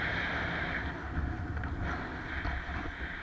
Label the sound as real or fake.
real